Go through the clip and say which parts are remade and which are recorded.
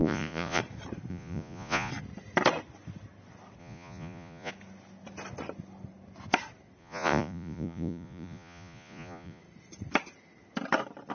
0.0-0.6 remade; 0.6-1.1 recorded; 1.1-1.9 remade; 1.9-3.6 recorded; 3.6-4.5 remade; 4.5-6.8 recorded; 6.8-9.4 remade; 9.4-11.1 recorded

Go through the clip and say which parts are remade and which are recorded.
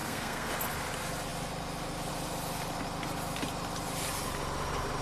0.0-0.5 remade; 0.5-5.0 recorded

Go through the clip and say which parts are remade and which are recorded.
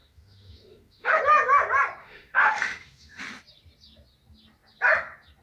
0.0-1.2 remade; 1.2-2.0 recorded; 2.0-3.2 remade; 3.2-5.4 recorded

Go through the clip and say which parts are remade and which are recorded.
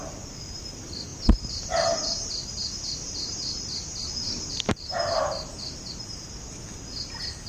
0.0-7.5 recorded